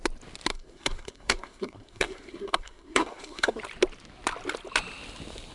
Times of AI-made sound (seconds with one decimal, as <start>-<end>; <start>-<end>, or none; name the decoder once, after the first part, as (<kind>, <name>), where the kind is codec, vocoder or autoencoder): 0.5-3.6 (codec, SNAC)